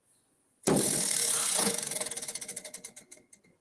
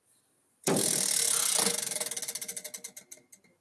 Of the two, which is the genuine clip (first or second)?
second